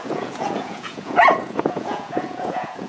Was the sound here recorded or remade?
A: remade